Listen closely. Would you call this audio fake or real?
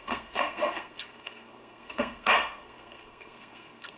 fake